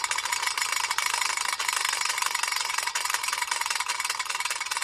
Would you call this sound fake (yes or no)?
no